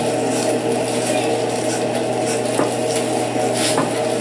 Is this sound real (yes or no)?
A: yes